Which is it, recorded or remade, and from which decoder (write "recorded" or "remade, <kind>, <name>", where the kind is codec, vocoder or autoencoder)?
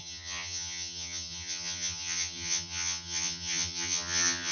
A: remade, vocoder, HiFi-GAN